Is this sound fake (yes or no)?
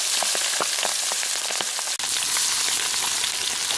no